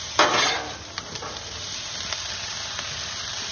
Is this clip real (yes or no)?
yes